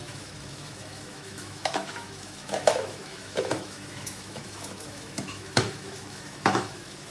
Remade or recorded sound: remade